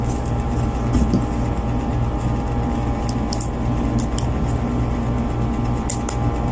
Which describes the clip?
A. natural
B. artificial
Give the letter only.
A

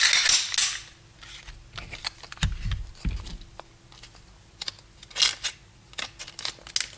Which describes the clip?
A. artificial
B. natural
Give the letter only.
B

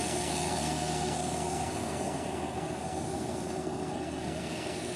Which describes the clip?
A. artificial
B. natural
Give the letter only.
A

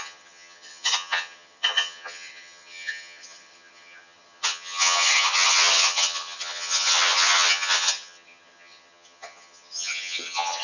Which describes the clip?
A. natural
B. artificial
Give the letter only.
B